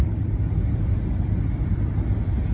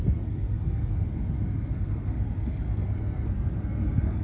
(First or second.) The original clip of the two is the first